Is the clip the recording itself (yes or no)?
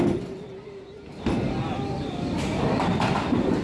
yes